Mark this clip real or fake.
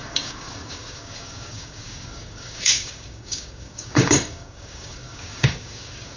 fake